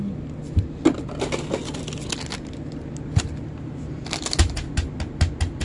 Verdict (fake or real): real